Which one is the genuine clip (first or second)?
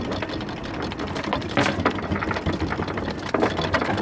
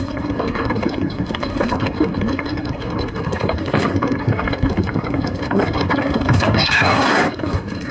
first